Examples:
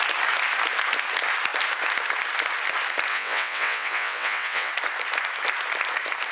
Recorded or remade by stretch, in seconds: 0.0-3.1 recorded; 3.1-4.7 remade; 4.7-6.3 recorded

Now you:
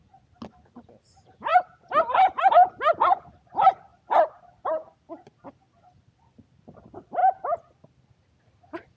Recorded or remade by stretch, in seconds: 0.0-9.0 recorded

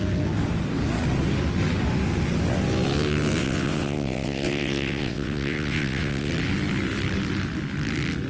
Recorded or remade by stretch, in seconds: 0.0-3.4 recorded; 3.4-6.3 remade; 6.3-8.3 recorded

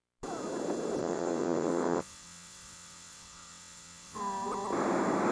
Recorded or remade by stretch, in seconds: 0.0-1.0 recorded; 1.0-4.2 remade; 4.2-5.3 recorded

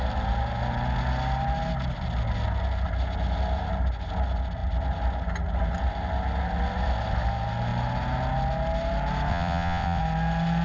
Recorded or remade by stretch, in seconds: 0.0-9.3 recorded; 9.3-10.0 remade; 10.0-10.6 recorded

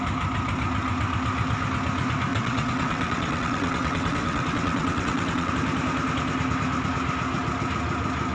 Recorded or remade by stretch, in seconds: 0.0-2.3 recorded; 2.3-5.5 remade; 5.5-8.3 recorded